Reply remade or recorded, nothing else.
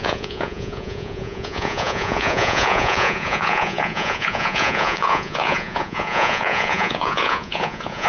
remade